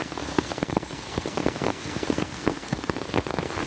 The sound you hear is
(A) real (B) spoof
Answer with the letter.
B